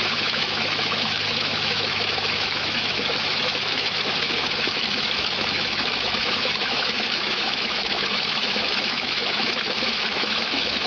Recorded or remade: remade